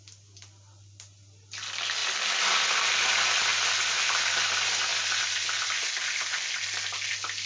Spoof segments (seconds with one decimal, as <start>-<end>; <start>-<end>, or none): none